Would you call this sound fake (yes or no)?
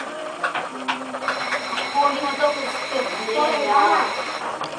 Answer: yes